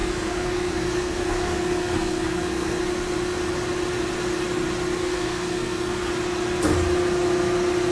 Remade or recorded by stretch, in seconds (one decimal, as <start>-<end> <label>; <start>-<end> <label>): 0.0-2.8 remade; 2.8-5.0 recorded; 5.0-6.1 remade; 6.1-7.9 recorded